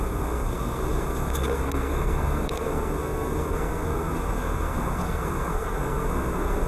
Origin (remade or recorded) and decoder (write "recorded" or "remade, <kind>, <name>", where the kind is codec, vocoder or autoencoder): remade, codec, SNAC